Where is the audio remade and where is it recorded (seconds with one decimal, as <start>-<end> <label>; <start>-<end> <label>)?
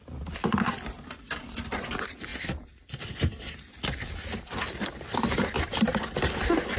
0.0-6.8 recorded